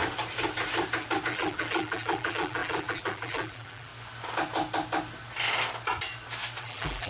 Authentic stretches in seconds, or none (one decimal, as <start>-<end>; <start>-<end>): 0.0-1.3; 3.9-6.6